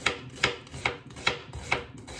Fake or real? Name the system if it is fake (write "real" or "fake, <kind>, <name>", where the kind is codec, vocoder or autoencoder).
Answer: real